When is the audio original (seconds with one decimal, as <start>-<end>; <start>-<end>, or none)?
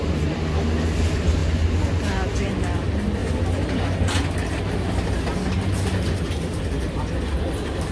0.0-7.9